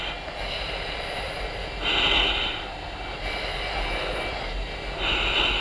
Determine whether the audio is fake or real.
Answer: real